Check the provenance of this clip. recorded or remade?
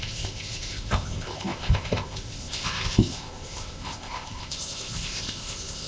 remade